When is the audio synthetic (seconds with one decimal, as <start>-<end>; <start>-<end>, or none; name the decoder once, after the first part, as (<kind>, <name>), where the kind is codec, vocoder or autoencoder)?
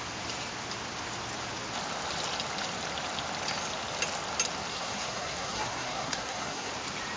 4.7-6.7 (codec, SNAC)